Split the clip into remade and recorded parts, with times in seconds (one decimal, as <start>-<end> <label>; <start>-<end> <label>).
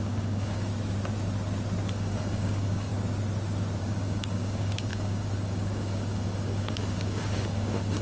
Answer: 0.0-0.7 remade; 0.7-1.9 recorded; 1.9-2.9 remade; 2.9-3.8 recorded; 3.8-8.0 remade